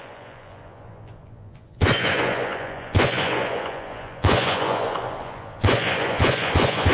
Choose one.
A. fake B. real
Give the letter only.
A